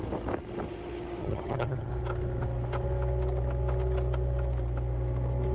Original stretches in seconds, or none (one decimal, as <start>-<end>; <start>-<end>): 0.0-1.2; 1.9-5.5